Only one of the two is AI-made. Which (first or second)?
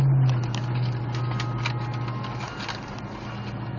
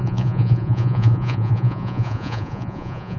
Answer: second